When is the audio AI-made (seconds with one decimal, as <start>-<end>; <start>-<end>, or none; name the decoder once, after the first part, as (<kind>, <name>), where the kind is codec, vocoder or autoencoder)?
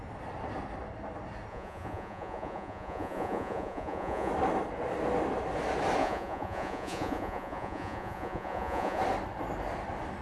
1.5-4.3 (vocoder, Vocos); 6.0-9.0